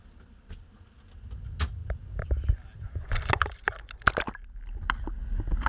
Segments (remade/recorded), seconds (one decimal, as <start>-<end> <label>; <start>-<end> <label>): 0.0-5.7 recorded

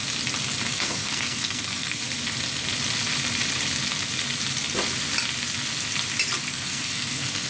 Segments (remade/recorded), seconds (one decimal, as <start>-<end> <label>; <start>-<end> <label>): 0.0-0.7 recorded; 0.7-2.0 remade; 2.0-6.5 recorded; 6.5-7.5 remade

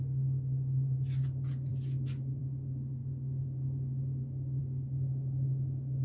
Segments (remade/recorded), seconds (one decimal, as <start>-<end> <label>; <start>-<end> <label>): 0.0-6.0 recorded

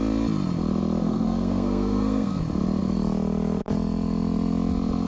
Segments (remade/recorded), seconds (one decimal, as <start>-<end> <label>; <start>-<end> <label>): 0.0-1.0 recorded; 1.0-2.4 remade; 2.4-5.1 recorded

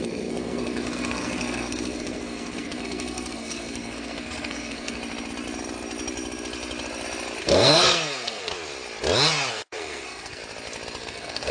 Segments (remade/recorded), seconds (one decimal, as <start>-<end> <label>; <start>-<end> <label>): 0.0-5.0 remade; 5.0-7.4 recorded; 7.4-8.5 remade; 8.5-9.5 recorded; 9.5-10.4 remade; 10.4-11.0 recorded; 11.0-11.5 remade

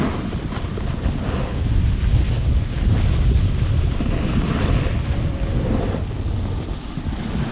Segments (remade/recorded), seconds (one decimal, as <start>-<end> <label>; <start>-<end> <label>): 0.0-7.5 recorded

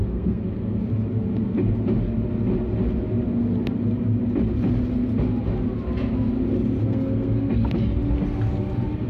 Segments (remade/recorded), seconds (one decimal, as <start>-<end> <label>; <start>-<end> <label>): 0.0-0.9 remade; 0.9-6.8 recorded; 6.8-7.6 remade; 7.6-9.1 recorded

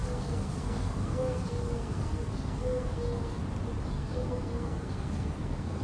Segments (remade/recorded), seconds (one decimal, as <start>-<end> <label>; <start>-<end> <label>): 0.0-3.4 remade; 3.4-3.9 recorded; 3.9-5.8 remade